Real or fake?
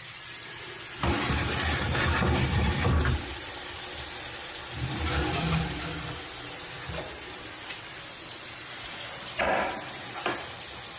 real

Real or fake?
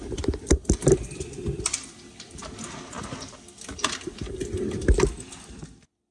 real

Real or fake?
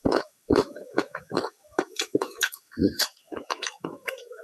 fake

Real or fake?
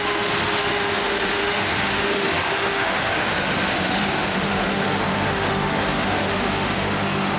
fake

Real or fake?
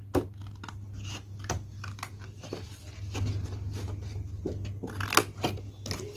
real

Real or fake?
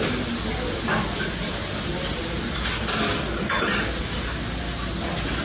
real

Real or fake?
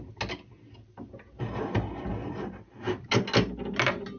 real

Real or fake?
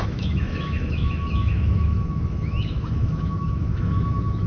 fake